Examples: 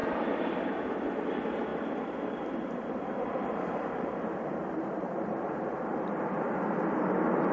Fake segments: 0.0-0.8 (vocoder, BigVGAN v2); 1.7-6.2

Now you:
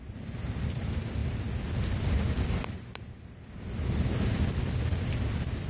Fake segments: none

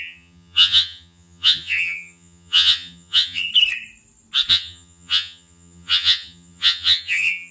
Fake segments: 0.0-3.5 (vocoder, HiFi-GAN); 4.5-7.5

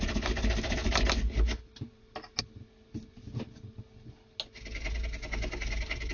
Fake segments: none

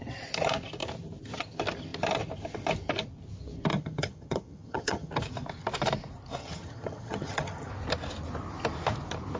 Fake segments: 3.7-5.1 (vocoder, HiFi-GAN); 6.4-7.7

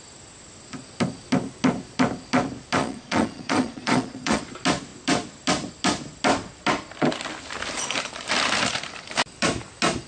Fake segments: 2.8-4.4 (vocoder, Vocos)

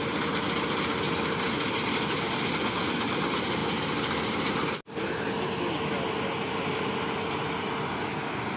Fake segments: none

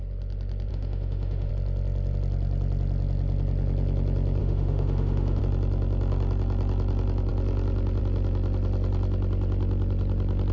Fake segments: 0.7-1.5 (autoencoder, DAC-VAE); 4.4-5.4